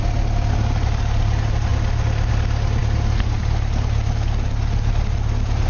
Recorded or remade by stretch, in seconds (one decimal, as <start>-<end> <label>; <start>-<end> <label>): 0.0-5.7 recorded